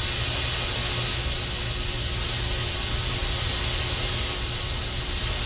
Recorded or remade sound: recorded